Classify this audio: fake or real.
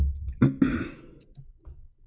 real